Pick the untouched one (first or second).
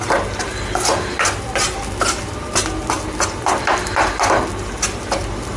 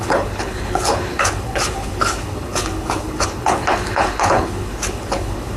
first